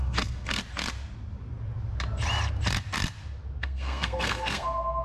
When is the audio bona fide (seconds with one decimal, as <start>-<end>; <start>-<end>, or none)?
0.6-3.6